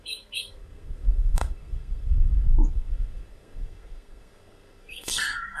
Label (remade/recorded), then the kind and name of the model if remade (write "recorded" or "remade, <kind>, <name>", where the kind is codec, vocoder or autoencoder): remade, codec, SNAC